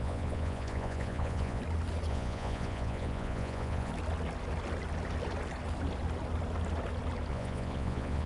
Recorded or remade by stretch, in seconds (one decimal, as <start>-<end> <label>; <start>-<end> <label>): 0.0-1.6 remade; 1.6-2.1 recorded; 2.1-3.9 remade; 3.9-7.3 recorded; 7.3-8.3 remade